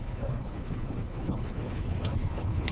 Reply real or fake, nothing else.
fake